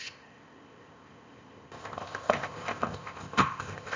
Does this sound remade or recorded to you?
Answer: remade